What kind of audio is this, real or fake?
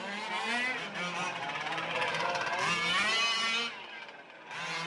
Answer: real